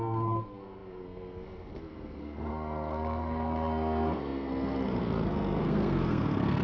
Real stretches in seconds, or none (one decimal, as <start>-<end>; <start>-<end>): none